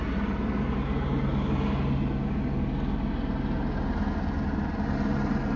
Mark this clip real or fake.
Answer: real